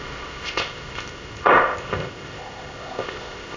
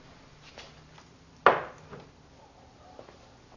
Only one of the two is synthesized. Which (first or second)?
first